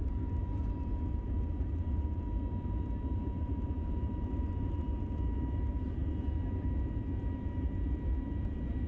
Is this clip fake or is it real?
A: fake